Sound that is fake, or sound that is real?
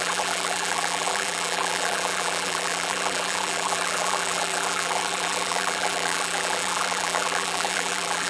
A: fake